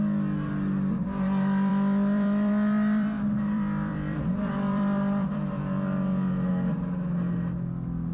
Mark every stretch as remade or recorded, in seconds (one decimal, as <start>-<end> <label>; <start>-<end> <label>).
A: 0.0-1.7 recorded; 1.7-6.5 remade; 6.5-8.1 recorded

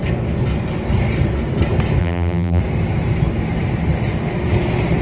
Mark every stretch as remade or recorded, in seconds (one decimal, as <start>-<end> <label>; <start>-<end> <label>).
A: 0.0-2.0 recorded; 2.0-2.6 remade; 2.6-5.0 recorded

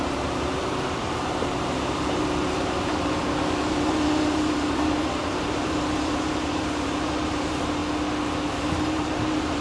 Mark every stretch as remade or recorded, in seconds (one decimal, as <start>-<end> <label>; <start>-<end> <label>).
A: 0.0-7.8 remade; 7.8-8.5 recorded; 8.5-9.6 remade

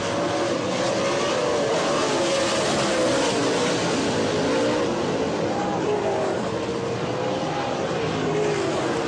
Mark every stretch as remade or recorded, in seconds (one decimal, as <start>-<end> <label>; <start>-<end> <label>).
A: 0.0-9.1 recorded

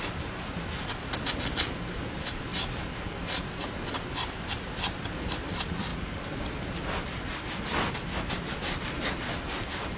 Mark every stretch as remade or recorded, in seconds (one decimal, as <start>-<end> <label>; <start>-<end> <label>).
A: 0.0-10.0 recorded

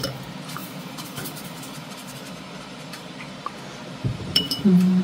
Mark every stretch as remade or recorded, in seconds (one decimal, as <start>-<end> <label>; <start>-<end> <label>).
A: 0.0-0.6 recorded; 0.6-3.6 remade; 3.6-4.1 recorded; 4.1-5.0 remade